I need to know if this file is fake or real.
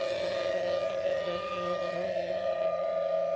fake